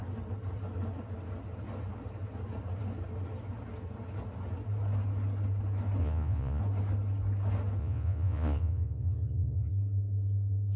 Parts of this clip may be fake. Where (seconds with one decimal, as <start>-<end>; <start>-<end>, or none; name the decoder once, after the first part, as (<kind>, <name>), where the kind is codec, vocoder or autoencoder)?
6.0-6.6 (vocoder, Vocos); 7.8-9.7